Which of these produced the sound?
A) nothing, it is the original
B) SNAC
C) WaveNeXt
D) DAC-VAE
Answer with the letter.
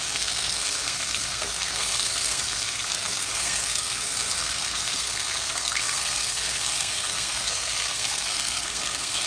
B